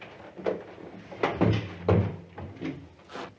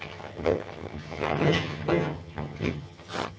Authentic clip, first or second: first